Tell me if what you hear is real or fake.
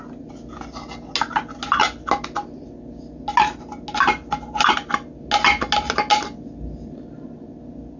real